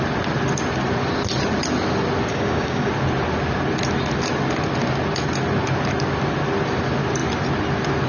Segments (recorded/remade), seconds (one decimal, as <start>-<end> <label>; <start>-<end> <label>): 0.0-2.3 recorded; 2.3-2.9 remade; 2.9-8.1 recorded